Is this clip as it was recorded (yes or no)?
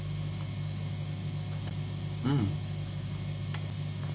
yes